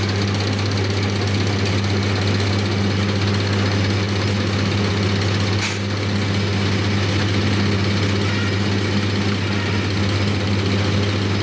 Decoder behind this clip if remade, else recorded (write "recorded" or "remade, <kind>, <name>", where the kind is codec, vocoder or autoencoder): recorded